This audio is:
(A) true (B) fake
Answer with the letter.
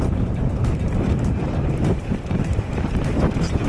B